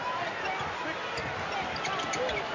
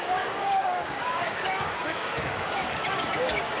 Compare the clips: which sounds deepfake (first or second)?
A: second